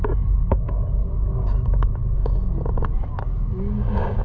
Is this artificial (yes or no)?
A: no